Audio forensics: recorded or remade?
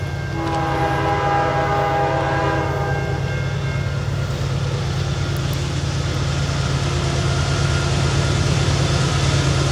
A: recorded